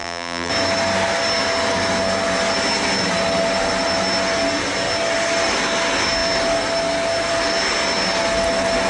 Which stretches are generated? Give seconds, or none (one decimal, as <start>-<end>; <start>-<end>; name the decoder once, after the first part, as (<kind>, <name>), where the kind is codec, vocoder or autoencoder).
0.0-0.5 (vocoder, BigVGAN v2)